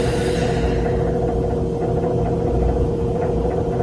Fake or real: real